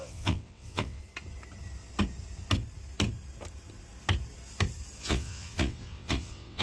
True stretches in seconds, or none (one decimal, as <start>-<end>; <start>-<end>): 1.0-5.0